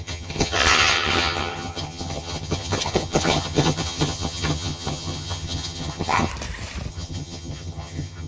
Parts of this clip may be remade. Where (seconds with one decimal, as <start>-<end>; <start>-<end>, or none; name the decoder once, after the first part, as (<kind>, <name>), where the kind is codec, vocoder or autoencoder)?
0.0-6.3 (vocoder, HiFi-GAN); 6.9-8.3